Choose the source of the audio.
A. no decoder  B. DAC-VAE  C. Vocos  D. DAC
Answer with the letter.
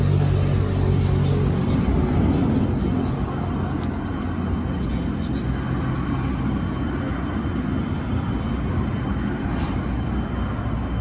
A